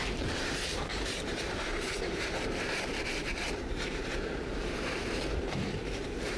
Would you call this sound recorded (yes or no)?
no